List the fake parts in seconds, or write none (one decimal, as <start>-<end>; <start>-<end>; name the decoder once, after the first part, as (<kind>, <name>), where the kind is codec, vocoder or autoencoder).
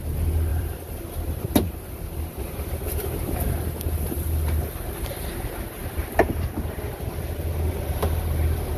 0.5-1.0 (vocoder, BigVGAN v2); 5.8-6.8